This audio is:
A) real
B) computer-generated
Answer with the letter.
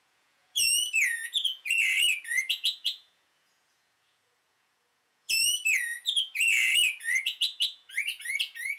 B